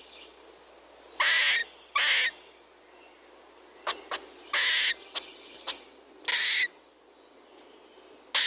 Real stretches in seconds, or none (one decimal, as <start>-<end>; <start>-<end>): 0.0-8.5